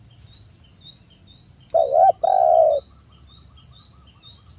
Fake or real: real